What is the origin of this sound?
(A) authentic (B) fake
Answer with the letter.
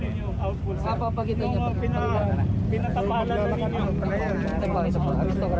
A